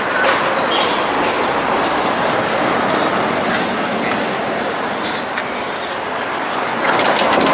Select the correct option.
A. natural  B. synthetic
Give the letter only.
A